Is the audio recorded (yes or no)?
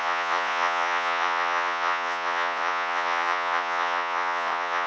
no